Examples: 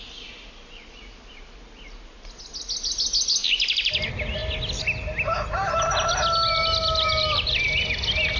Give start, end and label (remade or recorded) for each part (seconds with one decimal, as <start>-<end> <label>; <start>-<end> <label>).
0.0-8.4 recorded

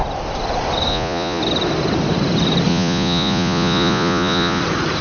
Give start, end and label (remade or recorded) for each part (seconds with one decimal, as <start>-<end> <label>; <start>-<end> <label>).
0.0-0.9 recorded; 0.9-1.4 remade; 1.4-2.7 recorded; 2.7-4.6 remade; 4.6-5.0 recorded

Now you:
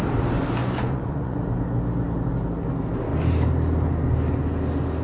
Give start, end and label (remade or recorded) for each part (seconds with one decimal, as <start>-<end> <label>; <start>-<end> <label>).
0.0-0.6 recorded; 0.6-1.4 remade; 1.4-5.0 recorded

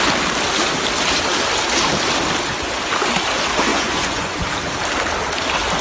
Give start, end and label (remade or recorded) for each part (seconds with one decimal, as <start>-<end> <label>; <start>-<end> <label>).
0.0-3.7 recorded; 3.7-4.4 remade; 4.4-5.8 recorded

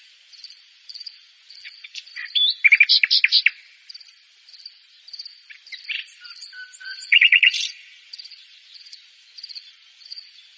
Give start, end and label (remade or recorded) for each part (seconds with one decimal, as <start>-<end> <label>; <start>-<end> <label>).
0.0-2.1 remade; 2.1-6.8 recorded; 6.8-10.6 remade

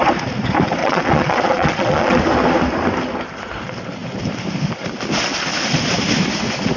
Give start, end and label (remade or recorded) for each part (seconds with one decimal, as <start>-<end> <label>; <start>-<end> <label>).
0.0-0.8 recorded; 0.8-2.1 remade; 2.1-6.8 recorded